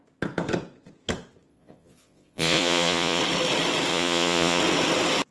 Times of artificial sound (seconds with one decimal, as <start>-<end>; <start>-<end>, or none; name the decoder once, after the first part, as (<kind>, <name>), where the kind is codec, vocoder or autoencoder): 1.5-3.2 (vocoder, Vocos); 3.9-4.6